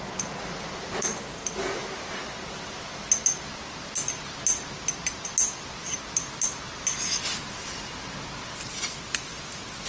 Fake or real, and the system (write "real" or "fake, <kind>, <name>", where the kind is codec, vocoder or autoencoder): real